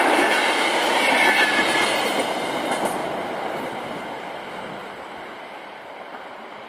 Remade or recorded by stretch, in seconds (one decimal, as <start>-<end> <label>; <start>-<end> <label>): 0.0-3.0 recorded; 3.0-3.6 remade; 3.6-4.8 recorded; 4.8-5.9 remade; 5.9-6.7 recorded